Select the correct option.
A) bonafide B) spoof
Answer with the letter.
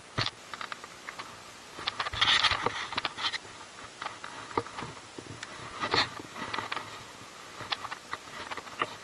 A